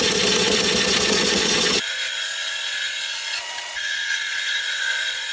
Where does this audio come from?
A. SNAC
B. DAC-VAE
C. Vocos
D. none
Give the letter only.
C